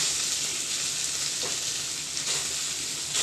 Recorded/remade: recorded